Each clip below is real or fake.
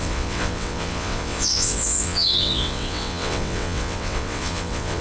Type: fake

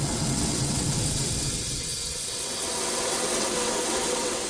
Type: fake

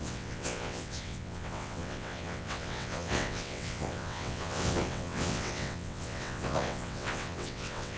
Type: fake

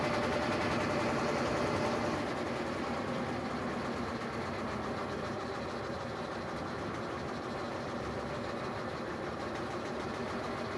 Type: real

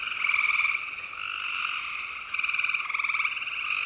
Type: real